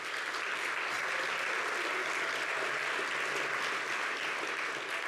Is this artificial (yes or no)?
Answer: no